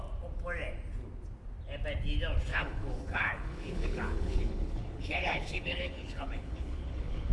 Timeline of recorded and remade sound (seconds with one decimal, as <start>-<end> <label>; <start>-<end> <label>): 0.0-2.5 recorded; 2.5-7.3 remade